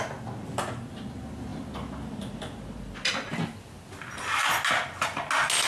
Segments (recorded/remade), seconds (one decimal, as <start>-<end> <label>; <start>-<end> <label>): 0.0-5.7 recorded